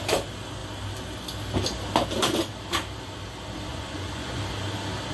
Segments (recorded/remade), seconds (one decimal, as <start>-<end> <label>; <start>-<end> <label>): 0.0-3.7 recorded; 3.7-4.4 remade; 4.4-5.1 recorded